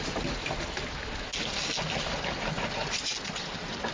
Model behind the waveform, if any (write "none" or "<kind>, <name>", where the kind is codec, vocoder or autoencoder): none